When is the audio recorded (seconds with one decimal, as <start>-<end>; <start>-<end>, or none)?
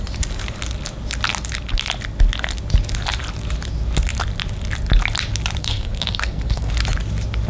0.0-5.6; 6.7-7.5